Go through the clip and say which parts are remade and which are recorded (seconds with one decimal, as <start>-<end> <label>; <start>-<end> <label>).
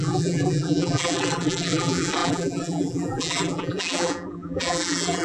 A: 0.0-5.2 remade